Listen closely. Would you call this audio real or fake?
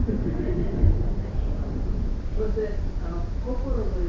real